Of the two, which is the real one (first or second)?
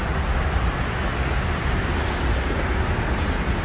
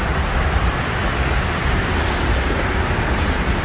first